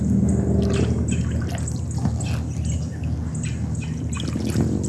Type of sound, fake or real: real